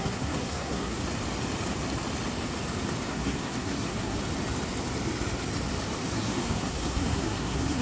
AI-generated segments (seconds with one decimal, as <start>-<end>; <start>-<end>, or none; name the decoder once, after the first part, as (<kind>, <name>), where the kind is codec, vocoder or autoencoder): 0.0-1.0 (codec, SNAC); 3.1-4.2; 6.1-7.8